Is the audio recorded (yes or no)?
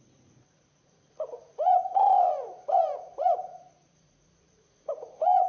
no